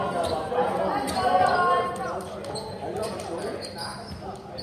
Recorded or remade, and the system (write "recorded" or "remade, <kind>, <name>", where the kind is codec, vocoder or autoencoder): recorded